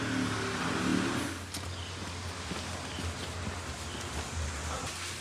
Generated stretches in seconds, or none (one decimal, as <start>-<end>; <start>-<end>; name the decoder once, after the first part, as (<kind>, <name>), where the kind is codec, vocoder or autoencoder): none